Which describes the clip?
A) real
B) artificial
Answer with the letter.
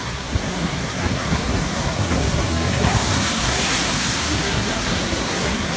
B